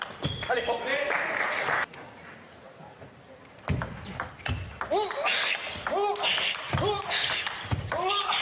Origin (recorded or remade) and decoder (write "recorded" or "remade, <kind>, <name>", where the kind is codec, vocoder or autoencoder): recorded